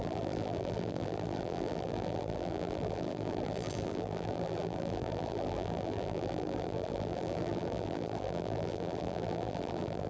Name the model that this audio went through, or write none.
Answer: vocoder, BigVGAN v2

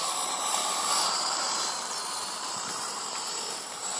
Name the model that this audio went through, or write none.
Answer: vocoder, BigVGAN v2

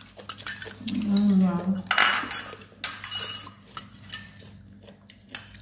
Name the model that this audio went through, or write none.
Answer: none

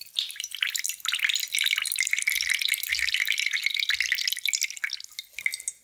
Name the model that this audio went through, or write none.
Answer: none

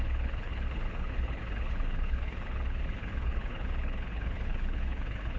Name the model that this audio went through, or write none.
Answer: codec, HILCodec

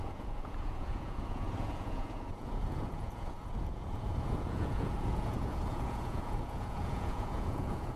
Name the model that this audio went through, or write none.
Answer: vocoder, Vocos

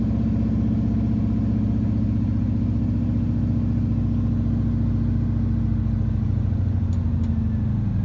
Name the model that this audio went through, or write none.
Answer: none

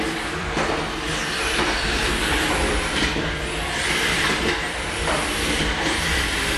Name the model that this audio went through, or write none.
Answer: vocoder, BigVGAN v2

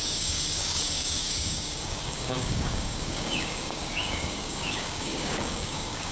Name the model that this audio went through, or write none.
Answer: codec, DAC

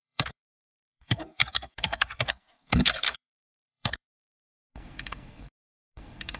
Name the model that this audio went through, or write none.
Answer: codec, SNAC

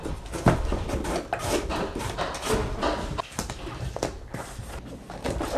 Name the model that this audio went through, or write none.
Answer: none